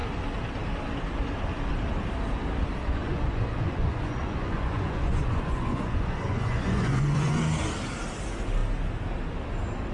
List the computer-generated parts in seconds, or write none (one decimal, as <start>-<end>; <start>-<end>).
2.8-7.4